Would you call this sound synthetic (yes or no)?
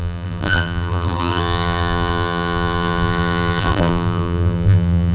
yes